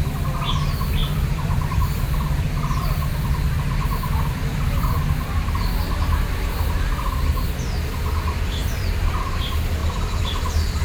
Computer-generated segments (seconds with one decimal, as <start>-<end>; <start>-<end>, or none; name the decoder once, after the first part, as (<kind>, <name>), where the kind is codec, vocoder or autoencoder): 1.0-4.9 (vocoder, BigVGAN v2); 8.6-9.2; 9.8-10.8